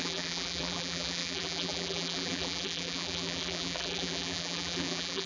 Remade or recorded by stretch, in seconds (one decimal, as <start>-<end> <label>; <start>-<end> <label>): 0.0-5.3 remade